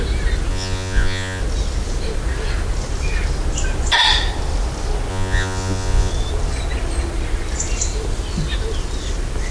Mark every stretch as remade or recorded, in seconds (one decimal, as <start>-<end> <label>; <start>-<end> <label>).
0.0-0.5 recorded; 0.5-1.4 remade; 1.4-5.1 recorded; 5.1-6.1 remade; 6.1-9.5 recorded